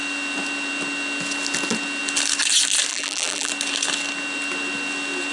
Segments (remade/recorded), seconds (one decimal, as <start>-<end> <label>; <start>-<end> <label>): 0.0-2.9 recorded; 2.9-3.5 remade; 3.5-5.3 recorded